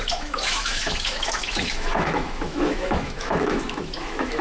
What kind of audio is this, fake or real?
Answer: fake